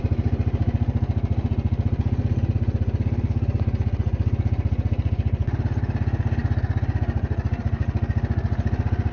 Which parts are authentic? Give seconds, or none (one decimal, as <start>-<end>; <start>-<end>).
0.0-9.1